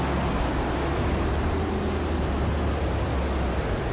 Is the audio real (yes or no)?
yes